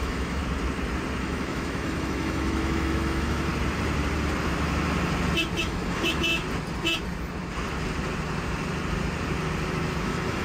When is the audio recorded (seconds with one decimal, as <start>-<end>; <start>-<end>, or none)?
0.4-1.2; 3.5-5.6; 6.4-10.0